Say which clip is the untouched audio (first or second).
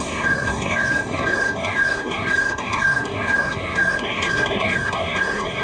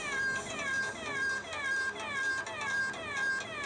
second